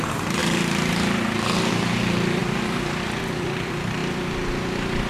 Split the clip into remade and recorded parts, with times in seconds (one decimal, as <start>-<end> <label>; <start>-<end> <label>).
0.0-0.4 remade; 0.4-1.7 recorded; 1.7-2.4 remade; 2.4-3.2 recorded; 3.2-4.0 remade; 4.0-5.1 recorded